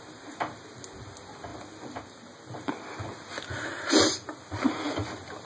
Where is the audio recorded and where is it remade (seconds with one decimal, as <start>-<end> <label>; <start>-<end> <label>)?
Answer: 0.0-5.5 recorded